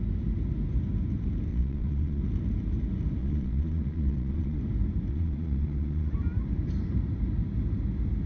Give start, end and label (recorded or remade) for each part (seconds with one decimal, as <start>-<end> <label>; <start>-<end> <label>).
0.0-1.5 recorded; 1.5-2.2 remade; 2.2-3.2 recorded; 3.2-4.6 remade; 4.6-5.1 recorded; 5.1-6.1 remade; 6.1-8.3 recorded